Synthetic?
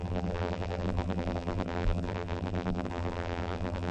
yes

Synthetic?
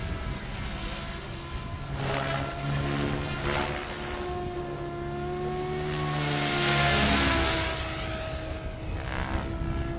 no